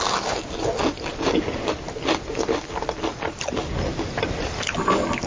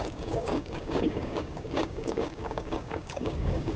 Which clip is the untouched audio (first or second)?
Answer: first